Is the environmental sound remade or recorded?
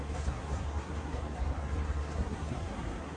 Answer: remade